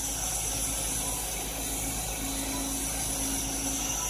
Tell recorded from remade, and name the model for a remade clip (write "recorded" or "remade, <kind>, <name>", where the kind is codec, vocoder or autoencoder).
recorded